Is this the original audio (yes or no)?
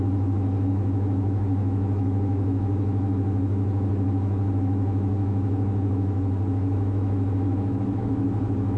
no